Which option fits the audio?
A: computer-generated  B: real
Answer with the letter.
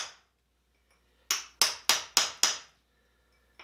B